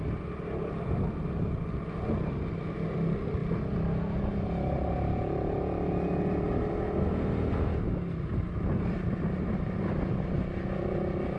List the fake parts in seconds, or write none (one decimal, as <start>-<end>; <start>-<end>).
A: none